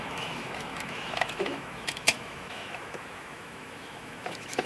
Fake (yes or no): yes